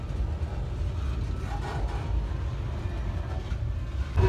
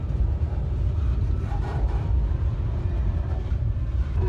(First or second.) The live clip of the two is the first